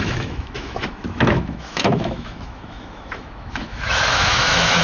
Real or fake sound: fake